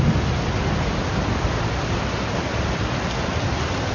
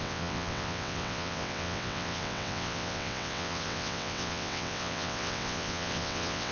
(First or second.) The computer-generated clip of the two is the second